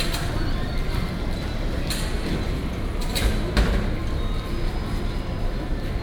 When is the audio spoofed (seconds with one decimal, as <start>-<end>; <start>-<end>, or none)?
none